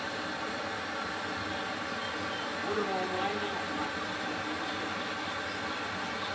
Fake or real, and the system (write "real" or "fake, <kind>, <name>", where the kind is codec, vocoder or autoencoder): real